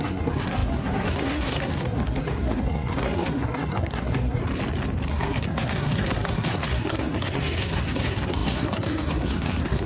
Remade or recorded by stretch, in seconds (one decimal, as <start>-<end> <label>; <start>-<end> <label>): 0.0-4.4 remade; 4.4-5.1 recorded; 5.1-9.9 remade